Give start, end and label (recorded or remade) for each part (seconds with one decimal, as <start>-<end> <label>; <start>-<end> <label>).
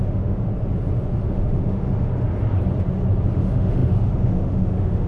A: 0.0-0.5 remade; 0.5-1.2 recorded; 1.2-2.1 remade; 2.1-3.3 recorded; 3.3-5.1 remade